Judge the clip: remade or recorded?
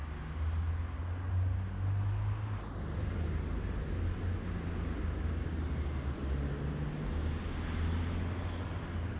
recorded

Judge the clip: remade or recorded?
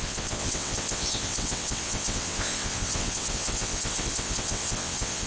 remade